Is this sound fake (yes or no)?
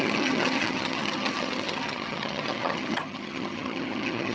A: yes